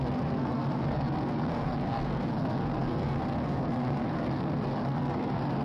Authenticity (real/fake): fake